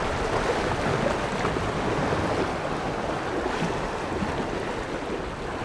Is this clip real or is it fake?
real